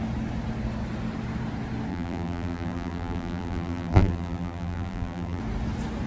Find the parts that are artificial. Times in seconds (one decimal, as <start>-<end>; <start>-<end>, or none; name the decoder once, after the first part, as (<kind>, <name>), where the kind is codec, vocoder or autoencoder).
1.9-5.4 (vocoder, BigVGAN v2)